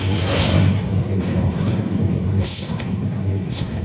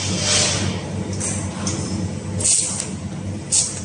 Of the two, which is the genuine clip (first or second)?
second